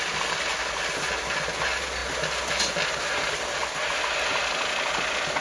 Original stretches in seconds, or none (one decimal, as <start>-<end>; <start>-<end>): 0.0-5.4